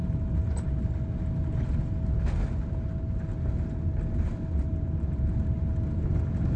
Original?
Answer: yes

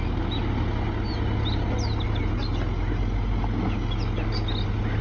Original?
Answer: yes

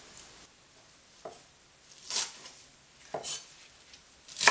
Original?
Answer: yes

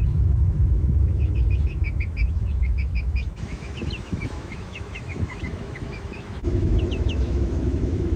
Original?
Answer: no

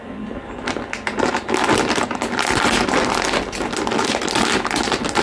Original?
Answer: yes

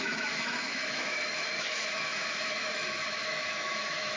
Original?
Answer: no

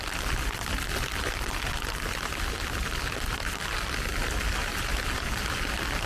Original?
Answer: yes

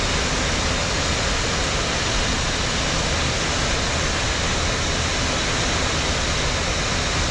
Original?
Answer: yes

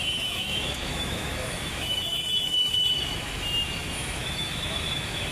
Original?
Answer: no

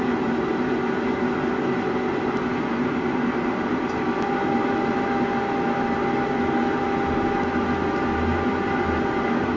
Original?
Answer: yes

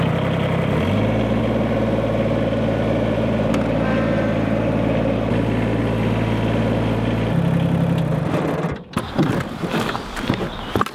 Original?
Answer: yes